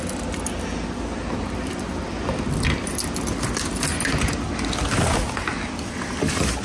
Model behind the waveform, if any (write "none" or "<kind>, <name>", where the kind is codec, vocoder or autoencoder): none